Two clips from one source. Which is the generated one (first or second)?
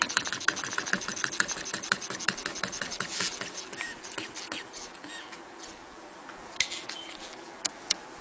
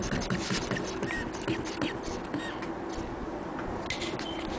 first